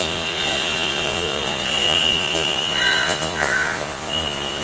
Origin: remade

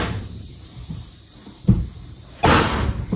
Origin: remade